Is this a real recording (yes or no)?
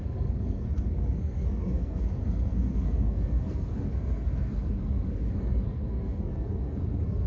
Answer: no